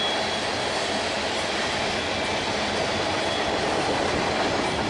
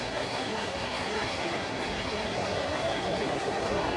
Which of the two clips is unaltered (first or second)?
first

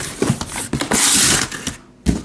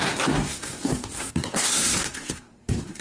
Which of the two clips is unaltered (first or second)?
first